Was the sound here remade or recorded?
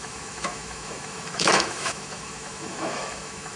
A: remade